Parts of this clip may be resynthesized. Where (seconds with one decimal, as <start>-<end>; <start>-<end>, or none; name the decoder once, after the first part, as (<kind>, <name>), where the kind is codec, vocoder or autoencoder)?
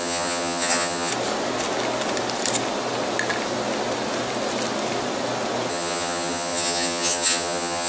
0.0-1.1 (vocoder, HiFi-GAN); 5.7-7.9